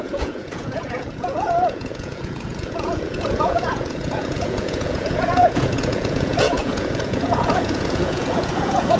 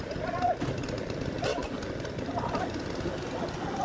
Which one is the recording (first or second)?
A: second